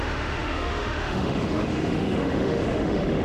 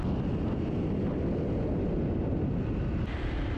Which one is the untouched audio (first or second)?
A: second